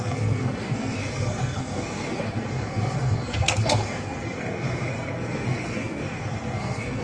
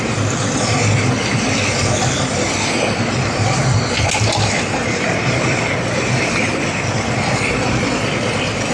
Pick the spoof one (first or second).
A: first